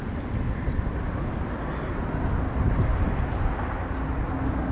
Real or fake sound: real